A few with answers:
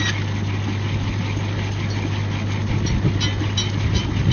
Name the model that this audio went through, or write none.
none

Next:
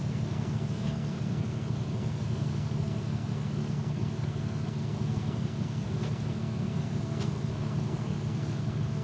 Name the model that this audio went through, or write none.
codec, SNAC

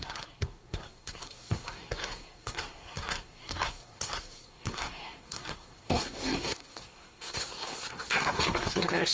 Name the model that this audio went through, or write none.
codec, SNAC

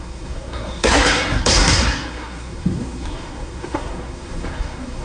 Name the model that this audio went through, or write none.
codec, SNAC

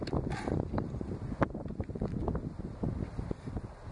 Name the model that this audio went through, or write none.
none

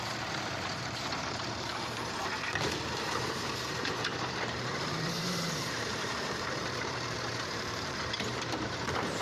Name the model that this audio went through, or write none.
vocoder, BigVGAN v2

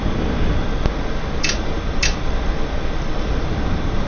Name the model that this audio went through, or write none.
none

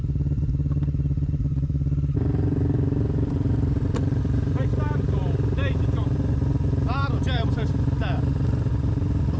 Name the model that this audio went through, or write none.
vocoder, BigVGAN v2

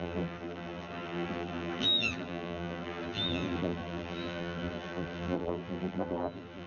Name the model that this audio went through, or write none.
vocoder, BigVGAN v2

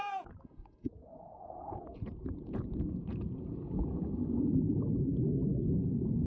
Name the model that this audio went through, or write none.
vocoder, Vocos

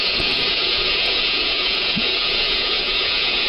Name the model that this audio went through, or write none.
vocoder, Vocos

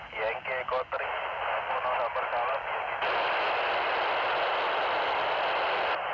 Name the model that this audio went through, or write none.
none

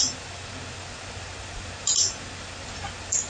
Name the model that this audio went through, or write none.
none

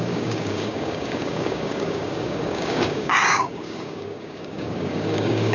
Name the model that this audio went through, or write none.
codec, DAC